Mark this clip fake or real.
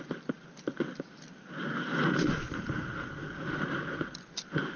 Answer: real